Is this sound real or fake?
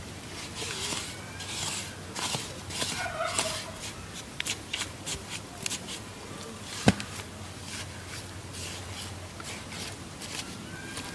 real